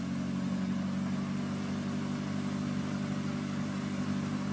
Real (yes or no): yes